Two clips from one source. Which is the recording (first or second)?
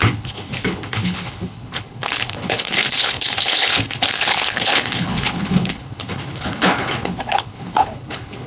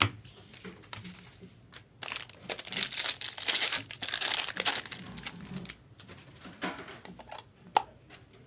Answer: second